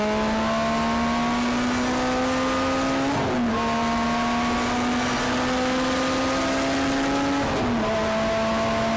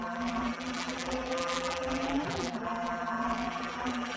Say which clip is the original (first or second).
first